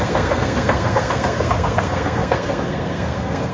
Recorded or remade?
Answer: remade